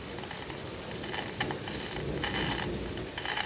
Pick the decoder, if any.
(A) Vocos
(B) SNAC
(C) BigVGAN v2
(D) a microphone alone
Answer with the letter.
D